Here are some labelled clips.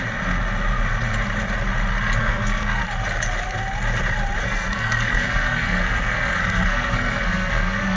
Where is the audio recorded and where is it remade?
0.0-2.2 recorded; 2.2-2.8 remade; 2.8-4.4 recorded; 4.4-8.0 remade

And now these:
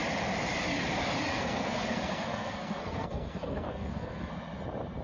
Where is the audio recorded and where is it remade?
0.0-1.3 recorded; 1.3-4.3 remade; 4.3-5.0 recorded

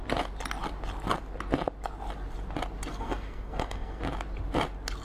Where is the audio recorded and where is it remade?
0.0-2.9 recorded; 2.9-4.0 remade; 4.0-5.0 recorded

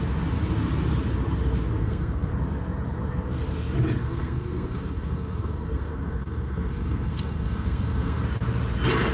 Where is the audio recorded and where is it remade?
0.0-1.8 recorded; 1.8-2.3 remade; 2.3-4.0 recorded; 4.0-8.2 remade; 8.2-9.1 recorded

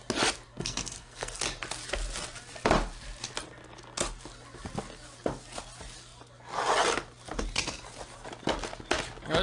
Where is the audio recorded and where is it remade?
0.0-0.5 recorded; 0.5-1.4 remade; 1.4-9.4 recorded